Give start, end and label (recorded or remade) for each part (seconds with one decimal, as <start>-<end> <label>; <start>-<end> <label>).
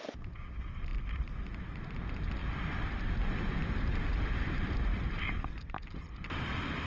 0.0-2.4 recorded; 2.4-4.1 remade; 4.1-6.9 recorded